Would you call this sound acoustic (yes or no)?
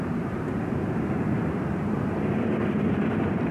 no